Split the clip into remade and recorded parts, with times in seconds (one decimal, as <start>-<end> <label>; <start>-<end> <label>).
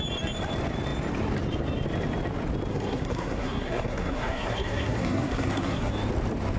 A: 0.0-2.7 recorded; 2.7-5.9 remade; 5.9-6.6 recorded